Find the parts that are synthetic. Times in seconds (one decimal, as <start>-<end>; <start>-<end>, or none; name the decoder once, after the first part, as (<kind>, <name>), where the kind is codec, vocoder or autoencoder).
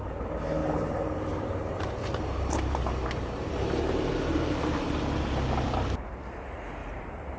0.6-4.8 (vocoder, BigVGAN v2); 6.8-7.4